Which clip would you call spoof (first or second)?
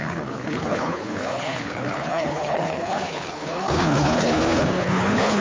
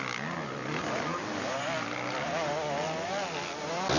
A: first